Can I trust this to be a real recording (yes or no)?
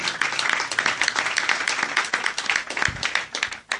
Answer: yes